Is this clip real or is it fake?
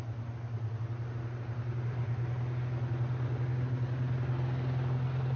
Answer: real